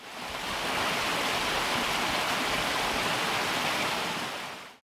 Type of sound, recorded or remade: recorded